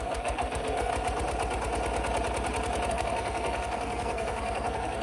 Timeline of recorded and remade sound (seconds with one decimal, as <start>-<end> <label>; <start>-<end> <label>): 0.0-0.9 remade; 0.9-2.9 recorded; 2.9-5.0 remade